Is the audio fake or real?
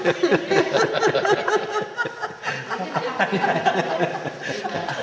real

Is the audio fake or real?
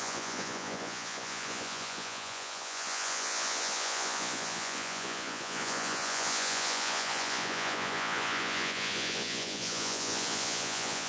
fake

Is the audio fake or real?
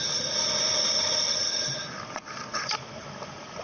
real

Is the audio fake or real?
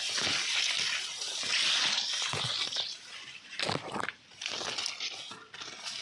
real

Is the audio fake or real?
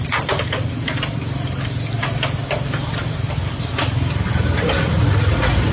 real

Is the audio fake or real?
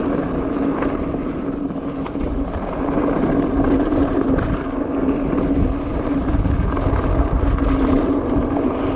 real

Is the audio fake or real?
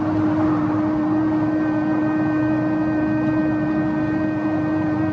real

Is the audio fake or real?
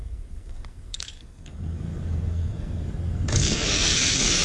fake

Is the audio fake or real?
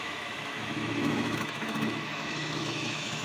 fake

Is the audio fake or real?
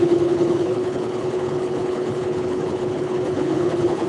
fake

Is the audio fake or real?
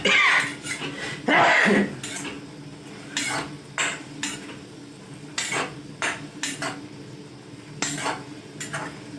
real